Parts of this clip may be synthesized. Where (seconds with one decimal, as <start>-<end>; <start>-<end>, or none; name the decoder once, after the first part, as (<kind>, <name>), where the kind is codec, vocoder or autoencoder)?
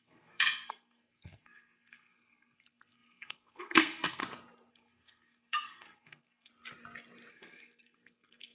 0.0-4.2 (codec, SNAC); 4.7-6.5; 7.3-8.5